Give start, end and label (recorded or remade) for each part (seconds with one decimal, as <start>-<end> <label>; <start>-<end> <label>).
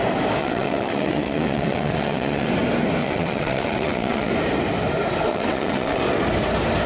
0.0-0.4 recorded; 0.4-2.5 remade; 2.5-3.0 recorded; 3.0-4.3 remade; 4.3-5.3 recorded; 5.3-6.0 remade; 6.0-6.9 recorded